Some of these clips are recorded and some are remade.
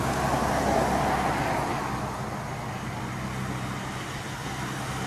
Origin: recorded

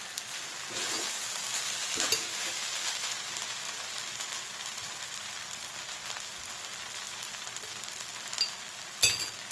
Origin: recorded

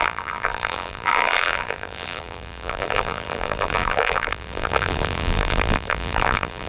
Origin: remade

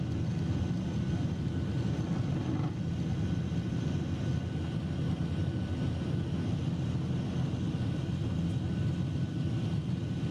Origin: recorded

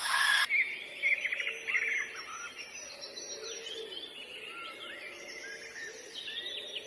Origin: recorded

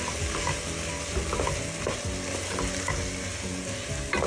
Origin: recorded